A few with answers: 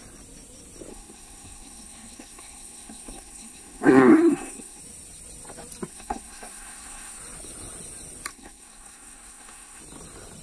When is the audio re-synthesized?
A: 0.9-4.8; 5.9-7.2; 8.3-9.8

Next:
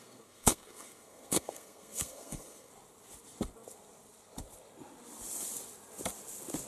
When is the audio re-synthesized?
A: 0.0-2.7

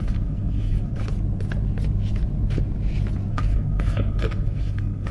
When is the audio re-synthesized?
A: 0.0-1.0; 3.3-5.1